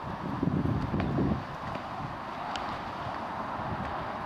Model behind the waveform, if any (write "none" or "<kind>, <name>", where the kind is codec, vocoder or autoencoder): none